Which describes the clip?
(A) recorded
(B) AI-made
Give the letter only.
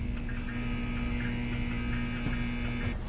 A